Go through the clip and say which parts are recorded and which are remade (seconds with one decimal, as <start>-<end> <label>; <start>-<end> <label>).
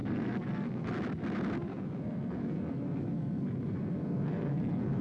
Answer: 0.0-0.9 remade; 0.9-1.7 recorded; 1.7-5.0 remade